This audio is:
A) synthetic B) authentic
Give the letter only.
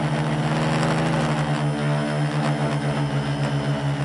B